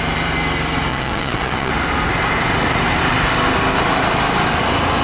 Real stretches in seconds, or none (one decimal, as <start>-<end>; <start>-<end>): 0.0-0.9; 1.7-5.0